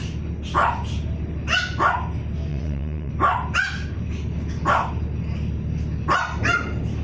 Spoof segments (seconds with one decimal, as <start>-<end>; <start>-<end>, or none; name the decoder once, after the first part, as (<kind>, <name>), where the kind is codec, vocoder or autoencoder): 2.5-3.1 (vocoder, WaveNeXt)